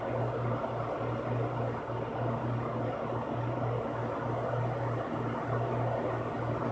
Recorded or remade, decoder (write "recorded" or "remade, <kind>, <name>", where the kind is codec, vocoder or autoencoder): recorded